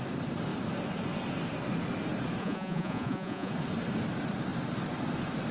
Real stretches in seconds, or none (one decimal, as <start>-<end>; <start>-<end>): 0.0-2.4; 3.5-5.5